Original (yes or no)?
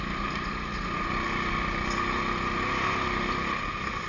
yes